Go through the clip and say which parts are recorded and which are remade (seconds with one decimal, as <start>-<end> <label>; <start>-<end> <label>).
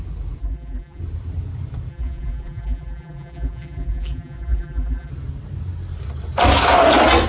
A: 0.0-0.4 recorded; 0.4-1.0 remade; 1.0-1.9 recorded; 1.9-5.1 remade; 5.1-7.3 recorded